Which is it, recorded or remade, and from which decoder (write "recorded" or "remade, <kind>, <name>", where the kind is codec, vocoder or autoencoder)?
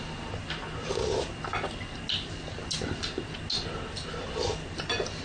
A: recorded